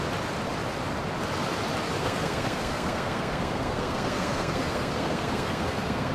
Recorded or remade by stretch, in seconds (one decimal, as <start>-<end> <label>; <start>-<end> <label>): 0.0-2.0 recorded; 2.0-6.1 remade